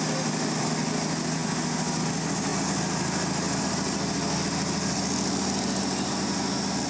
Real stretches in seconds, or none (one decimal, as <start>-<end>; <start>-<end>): 0.0-6.9